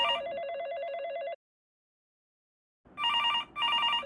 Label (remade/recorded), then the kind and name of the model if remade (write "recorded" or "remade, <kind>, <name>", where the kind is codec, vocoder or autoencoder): recorded